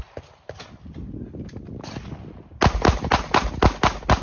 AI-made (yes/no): no